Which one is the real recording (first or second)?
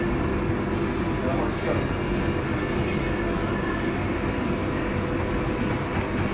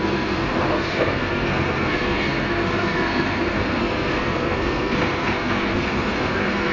first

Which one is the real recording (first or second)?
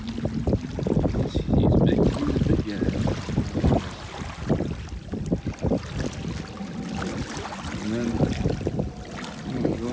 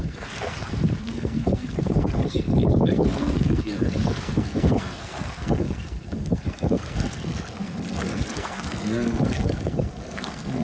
first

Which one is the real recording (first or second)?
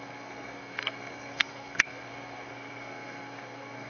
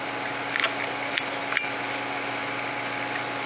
second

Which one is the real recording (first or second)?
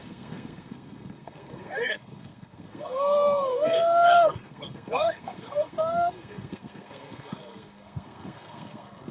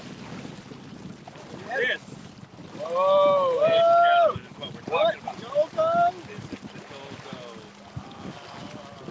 second